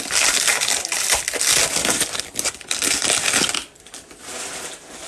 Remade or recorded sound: recorded